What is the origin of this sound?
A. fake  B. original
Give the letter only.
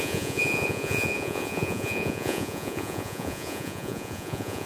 A